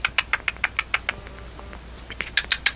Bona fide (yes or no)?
yes